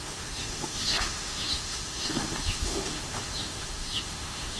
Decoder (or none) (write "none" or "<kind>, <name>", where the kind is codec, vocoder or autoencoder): autoencoder, DAC-VAE